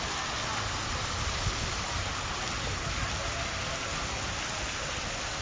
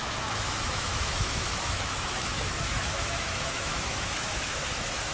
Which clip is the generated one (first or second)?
second